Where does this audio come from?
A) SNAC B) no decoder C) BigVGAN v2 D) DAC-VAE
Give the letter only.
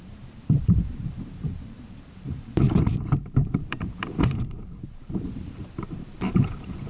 C